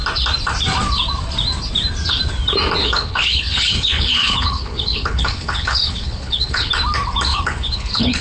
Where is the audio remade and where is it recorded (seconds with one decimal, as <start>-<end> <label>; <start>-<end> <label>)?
0.0-2.8 recorded; 2.8-6.7 remade; 6.7-7.3 recorded; 7.3-8.2 remade